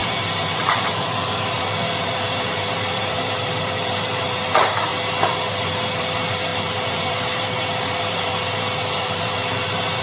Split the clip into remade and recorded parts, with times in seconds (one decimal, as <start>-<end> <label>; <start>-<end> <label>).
0.0-4.9 remade; 4.9-5.5 recorded; 5.5-10.0 remade